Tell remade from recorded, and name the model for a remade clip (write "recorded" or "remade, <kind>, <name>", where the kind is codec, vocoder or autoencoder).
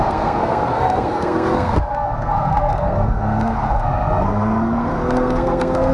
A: remade, codec, SNAC